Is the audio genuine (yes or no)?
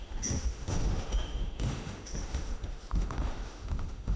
no